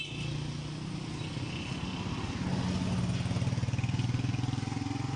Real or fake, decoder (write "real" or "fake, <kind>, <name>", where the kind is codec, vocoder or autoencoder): real